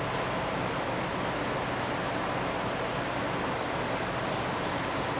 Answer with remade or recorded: recorded